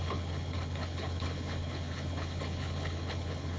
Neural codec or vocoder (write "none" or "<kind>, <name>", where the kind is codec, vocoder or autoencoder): codec, HILCodec